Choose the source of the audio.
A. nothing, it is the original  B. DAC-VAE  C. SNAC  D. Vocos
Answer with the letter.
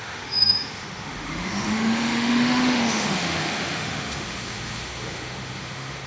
B